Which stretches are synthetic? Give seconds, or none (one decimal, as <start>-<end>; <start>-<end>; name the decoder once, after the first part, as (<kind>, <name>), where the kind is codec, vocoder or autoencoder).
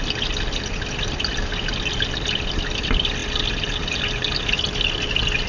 none